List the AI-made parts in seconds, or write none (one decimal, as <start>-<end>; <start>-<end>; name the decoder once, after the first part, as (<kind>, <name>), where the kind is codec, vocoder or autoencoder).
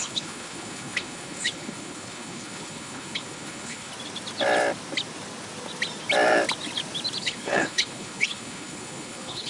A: 0.0-3.9 (codec, HILCodec); 7.2-9.5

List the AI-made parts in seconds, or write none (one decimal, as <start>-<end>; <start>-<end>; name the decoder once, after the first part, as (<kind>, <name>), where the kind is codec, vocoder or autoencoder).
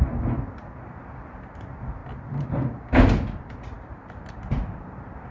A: none